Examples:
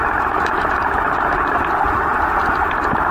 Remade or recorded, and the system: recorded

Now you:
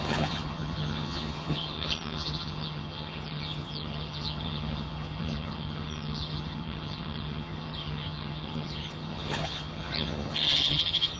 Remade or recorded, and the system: remade, vocoder, HiFi-GAN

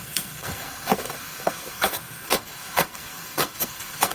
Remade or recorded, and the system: remade, codec, SNAC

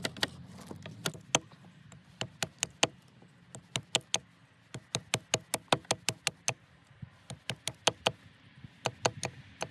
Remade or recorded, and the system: recorded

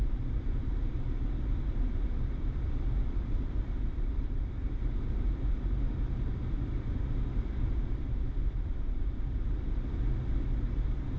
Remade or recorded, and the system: remade, vocoder, BigVGAN v2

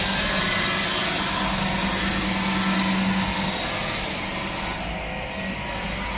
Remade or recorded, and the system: recorded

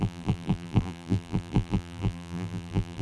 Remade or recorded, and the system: remade, vocoder, BigVGAN v2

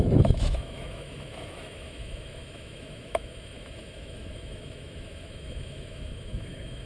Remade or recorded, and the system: remade, autoencoder, DAC-VAE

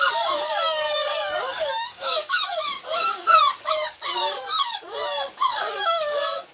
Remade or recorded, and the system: remade, codec, DAC